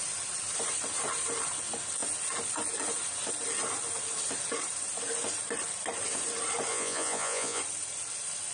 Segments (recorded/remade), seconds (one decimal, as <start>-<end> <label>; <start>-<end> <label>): 0.0-6.7 recorded; 6.7-7.6 remade; 7.6-8.5 recorded